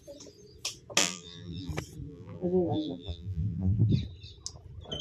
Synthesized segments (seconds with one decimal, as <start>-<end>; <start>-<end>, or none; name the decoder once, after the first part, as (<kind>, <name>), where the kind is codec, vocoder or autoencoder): 1.0-1.7 (vocoder, BigVGAN v2); 2.1-3.9